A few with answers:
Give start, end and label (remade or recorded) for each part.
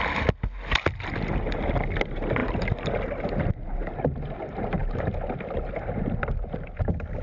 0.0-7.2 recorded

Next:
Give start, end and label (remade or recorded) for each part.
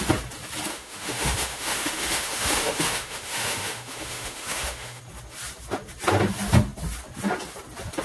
0.0-0.7 recorded; 0.7-5.0 remade; 5.0-8.0 recorded